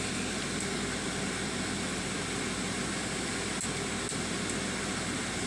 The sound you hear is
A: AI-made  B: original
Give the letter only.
B